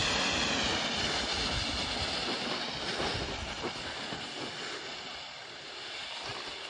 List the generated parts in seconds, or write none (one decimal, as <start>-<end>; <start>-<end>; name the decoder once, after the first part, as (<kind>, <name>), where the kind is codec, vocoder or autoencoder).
none